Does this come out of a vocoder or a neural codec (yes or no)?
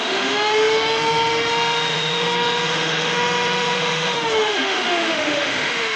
yes